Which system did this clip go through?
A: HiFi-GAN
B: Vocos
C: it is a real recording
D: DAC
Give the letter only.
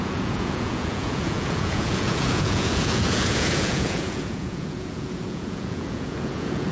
B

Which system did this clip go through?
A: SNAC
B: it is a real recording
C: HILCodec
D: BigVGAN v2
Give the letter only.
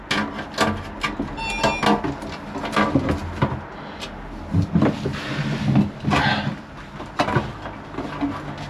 B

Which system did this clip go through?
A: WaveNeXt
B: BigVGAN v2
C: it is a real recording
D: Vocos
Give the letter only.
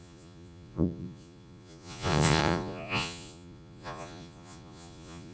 D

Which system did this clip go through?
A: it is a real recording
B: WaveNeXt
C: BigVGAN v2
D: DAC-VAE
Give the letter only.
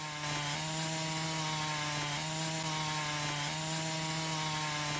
A